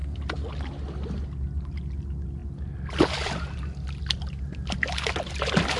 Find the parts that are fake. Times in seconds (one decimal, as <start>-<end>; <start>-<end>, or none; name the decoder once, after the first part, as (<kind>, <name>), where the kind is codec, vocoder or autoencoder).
none